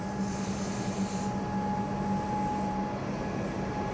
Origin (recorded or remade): recorded